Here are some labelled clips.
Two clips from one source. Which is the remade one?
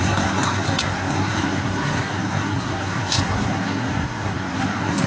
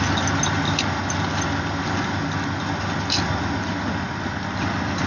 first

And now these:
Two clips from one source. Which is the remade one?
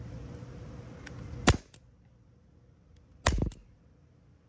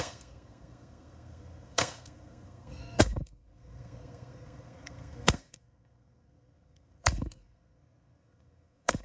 second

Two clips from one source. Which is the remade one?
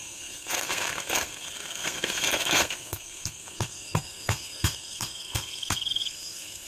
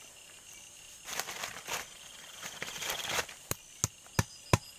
first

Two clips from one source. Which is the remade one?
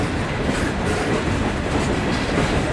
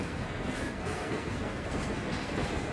second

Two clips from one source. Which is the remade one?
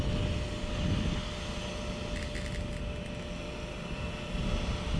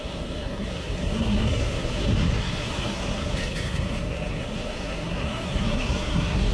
second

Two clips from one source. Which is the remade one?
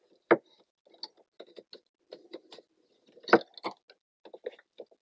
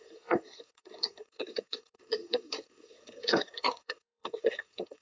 second